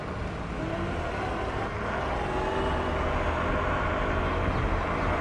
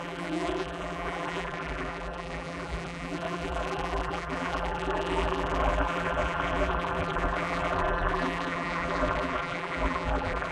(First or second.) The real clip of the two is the first